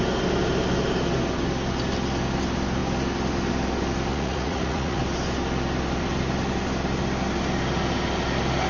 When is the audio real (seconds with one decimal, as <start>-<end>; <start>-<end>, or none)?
0.0-4.1; 5.0-8.7